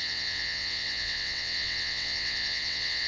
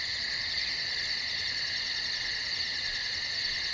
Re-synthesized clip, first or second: first